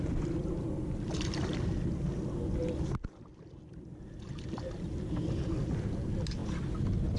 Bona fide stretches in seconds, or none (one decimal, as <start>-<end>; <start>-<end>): 0.0-7.2